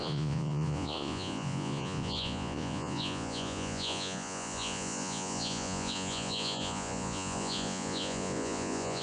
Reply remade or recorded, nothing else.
remade